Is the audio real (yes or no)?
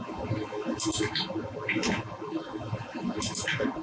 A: yes